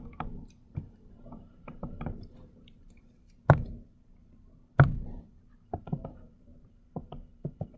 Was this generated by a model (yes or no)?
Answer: yes